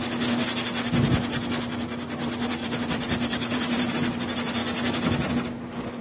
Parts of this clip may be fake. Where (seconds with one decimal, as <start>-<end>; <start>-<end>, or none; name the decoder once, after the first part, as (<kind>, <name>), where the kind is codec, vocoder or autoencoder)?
2.6-3.9 (vocoder, BigVGAN v2)